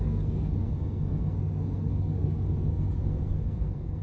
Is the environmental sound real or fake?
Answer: fake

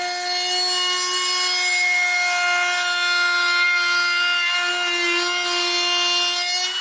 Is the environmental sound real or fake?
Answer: real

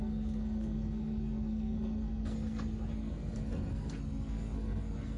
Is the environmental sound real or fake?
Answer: fake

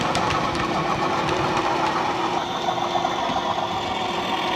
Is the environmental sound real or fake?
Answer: real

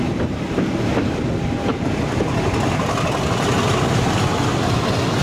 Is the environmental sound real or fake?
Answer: real